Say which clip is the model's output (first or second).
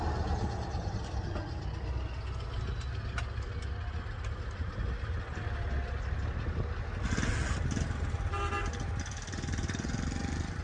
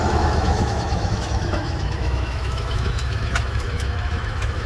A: second